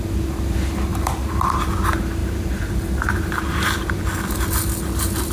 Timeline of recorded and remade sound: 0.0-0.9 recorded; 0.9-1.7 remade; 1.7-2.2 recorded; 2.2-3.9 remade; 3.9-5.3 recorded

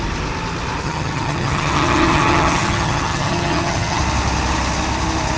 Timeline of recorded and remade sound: 0.0-0.8 recorded; 0.8-4.0 remade; 4.0-5.4 recorded

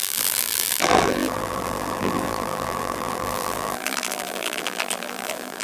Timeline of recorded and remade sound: 0.0-5.6 remade

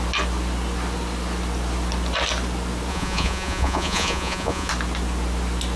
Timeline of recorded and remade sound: 0.0-2.9 recorded; 2.9-4.7 remade; 4.7-5.8 recorded

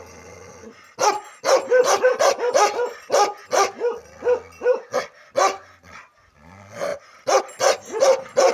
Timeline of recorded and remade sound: 0.0-6.9 recorded; 6.9-7.4 remade; 7.4-8.5 recorded